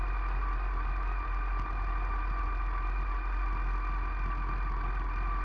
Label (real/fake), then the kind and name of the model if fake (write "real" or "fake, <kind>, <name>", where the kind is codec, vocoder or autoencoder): real